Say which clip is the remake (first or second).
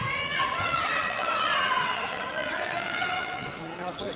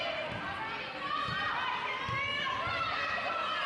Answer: first